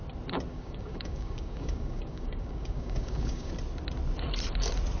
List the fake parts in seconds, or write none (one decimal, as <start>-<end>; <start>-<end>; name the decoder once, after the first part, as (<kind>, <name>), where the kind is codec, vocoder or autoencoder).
0.5-3.5 (codec, DAC)